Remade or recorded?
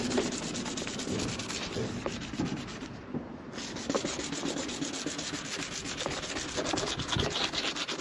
recorded